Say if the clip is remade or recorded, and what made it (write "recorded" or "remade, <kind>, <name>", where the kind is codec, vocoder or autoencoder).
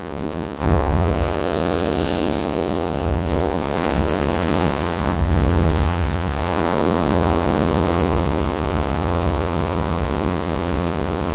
remade, vocoder, Vocos